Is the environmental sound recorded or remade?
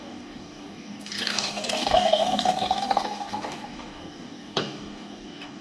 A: remade